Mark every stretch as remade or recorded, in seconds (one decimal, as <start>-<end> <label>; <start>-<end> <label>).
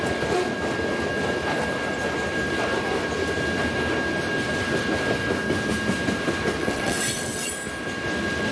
0.0-6.6 recorded; 6.6-7.5 remade; 7.5-8.5 recorded